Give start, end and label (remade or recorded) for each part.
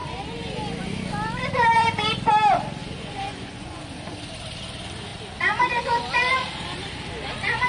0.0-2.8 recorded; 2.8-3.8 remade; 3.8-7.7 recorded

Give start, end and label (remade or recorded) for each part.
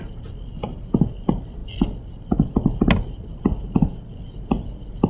0.0-5.1 recorded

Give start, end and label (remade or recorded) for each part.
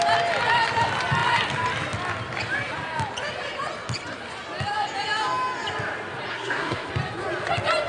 0.0-6.3 recorded; 6.3-6.9 remade; 6.9-7.9 recorded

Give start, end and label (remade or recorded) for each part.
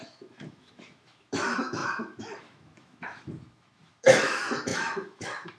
0.0-5.6 remade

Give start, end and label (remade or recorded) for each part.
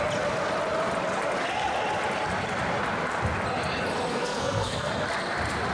0.0-4.1 recorded; 4.1-4.9 remade; 4.9-5.7 recorded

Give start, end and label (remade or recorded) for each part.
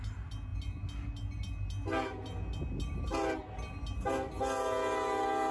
0.0-5.5 recorded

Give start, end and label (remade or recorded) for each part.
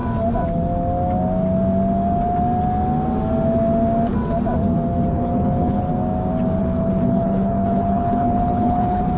0.0-5.1 recorded; 5.1-5.9 remade; 5.9-6.6 recorded; 6.6-9.2 remade